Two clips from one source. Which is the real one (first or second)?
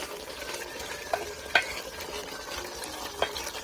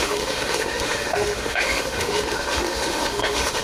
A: first